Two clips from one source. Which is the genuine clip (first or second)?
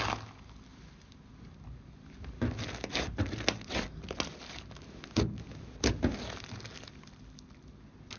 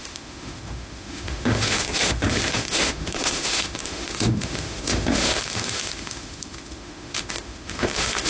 first